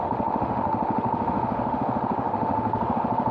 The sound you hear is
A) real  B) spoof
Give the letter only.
B